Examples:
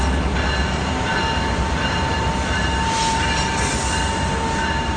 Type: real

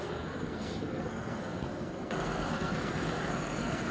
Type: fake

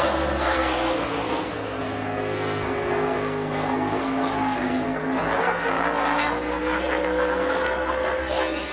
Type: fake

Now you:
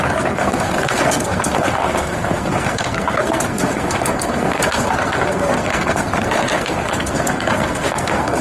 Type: fake